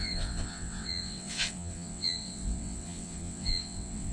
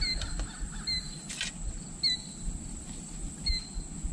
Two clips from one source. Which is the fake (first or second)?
first